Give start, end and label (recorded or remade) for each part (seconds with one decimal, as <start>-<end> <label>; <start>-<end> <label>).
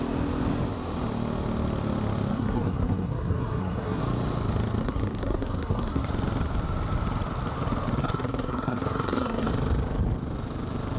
0.0-2.3 recorded; 2.3-4.0 remade; 4.0-4.8 recorded; 4.8-6.1 remade; 6.1-8.0 recorded; 8.0-9.5 remade; 9.5-11.0 recorded